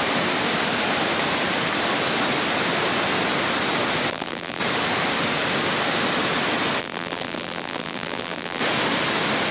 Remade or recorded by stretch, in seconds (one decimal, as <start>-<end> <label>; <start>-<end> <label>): 0.0-4.1 recorded; 4.1-4.6 remade; 4.6-6.8 recorded; 6.8-8.6 remade; 8.6-9.5 recorded